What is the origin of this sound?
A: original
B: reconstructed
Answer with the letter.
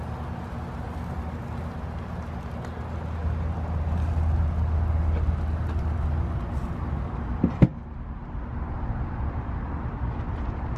A